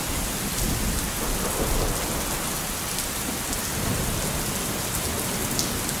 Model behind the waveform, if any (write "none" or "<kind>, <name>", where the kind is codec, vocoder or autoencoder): none